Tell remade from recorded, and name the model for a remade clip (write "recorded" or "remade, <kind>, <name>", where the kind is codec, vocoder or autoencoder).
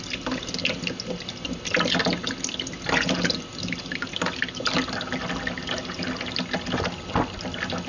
recorded